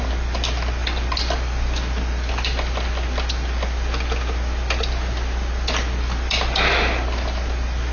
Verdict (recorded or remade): recorded